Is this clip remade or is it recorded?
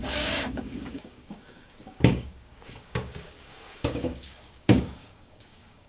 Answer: remade